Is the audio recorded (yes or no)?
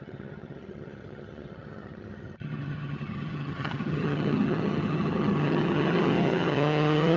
no